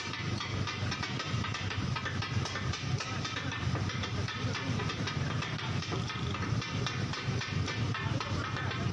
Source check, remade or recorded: remade